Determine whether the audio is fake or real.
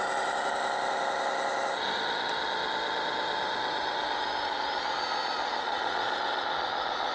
real